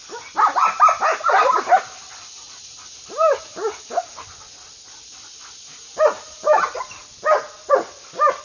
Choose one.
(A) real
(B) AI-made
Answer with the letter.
A